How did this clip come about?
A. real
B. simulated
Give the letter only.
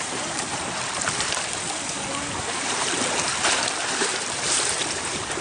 B